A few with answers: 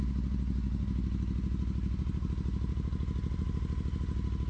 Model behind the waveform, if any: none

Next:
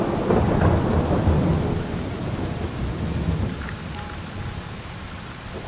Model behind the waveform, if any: none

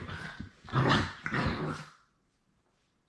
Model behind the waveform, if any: vocoder, BigVGAN v2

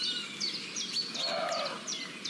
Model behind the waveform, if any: none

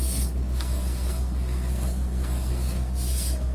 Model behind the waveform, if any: codec, SNAC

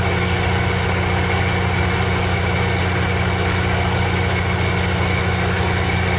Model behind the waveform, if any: none